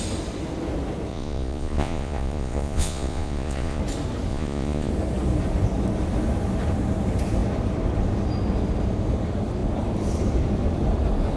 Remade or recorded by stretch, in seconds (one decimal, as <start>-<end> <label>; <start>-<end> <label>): 0.0-1.1 recorded; 1.1-3.8 remade; 3.8-4.3 recorded; 4.3-4.9 remade; 4.9-11.4 recorded